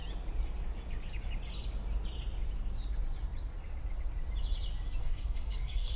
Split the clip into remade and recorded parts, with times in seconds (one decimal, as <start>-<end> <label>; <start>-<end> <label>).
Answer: 0.0-5.0 recorded; 5.0-6.0 remade